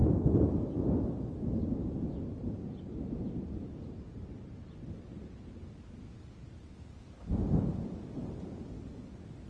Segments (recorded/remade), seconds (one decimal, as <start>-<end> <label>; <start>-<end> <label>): 0.0-9.5 recorded